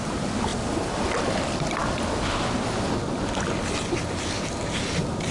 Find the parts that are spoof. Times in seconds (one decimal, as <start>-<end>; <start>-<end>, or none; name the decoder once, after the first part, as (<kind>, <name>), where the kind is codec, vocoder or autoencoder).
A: none